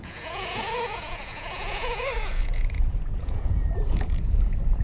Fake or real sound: fake